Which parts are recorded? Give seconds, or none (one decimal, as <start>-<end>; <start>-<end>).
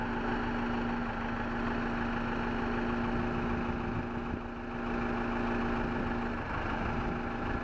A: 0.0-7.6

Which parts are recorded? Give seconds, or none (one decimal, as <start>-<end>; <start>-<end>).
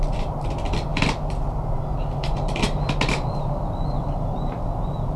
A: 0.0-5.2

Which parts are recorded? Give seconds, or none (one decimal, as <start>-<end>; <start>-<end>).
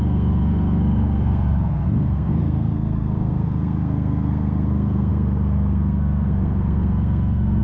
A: none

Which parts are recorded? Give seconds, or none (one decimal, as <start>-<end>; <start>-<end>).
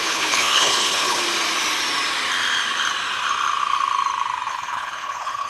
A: 1.2-4.5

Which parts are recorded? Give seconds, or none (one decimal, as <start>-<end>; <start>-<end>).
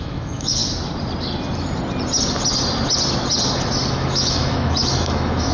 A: 0.6-3.9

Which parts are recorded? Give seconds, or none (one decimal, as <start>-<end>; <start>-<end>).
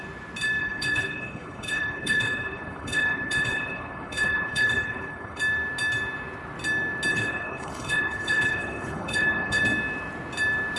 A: 0.0-0.6; 5.4-7.1; 9.6-10.8